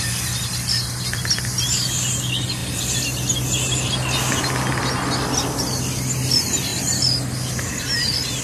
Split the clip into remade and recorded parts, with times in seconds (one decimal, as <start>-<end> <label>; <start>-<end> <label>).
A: 0.0-8.4 recorded